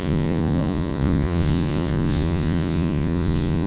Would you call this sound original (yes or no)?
no